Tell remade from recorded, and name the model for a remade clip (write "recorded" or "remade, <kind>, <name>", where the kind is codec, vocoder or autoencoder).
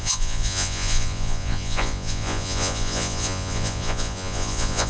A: remade, vocoder, Vocos